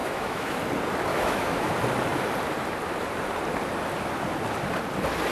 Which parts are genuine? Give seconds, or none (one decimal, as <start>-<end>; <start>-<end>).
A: 0.6-1.1; 1.7-5.3